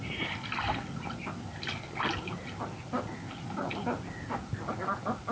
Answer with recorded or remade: recorded